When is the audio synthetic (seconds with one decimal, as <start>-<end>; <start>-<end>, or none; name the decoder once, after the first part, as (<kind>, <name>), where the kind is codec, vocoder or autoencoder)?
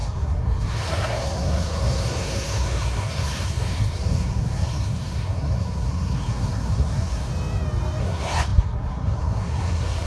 0.0-7.3 (codec, SNAC); 8.0-10.1